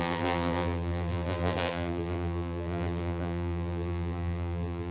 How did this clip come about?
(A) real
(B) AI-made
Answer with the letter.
B